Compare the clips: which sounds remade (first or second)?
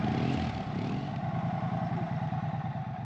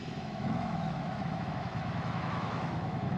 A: second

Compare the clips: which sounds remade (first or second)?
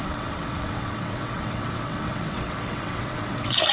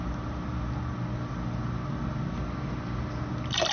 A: first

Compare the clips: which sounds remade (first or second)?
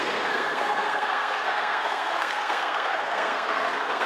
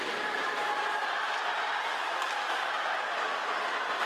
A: first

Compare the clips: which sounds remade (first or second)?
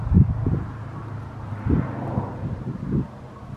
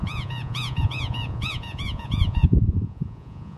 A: second